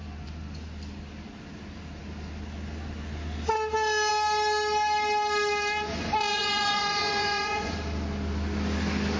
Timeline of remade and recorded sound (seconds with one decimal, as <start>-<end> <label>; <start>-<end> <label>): 0.0-6.3 recorded; 6.3-7.7 remade; 7.7-9.2 recorded